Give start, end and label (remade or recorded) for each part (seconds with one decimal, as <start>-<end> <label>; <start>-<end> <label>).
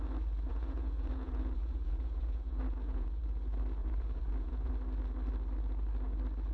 0.0-0.5 recorded; 0.5-3.2 remade; 3.2-3.8 recorded; 3.8-4.7 remade; 4.7-6.5 recorded